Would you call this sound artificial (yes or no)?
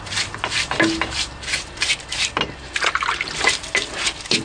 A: no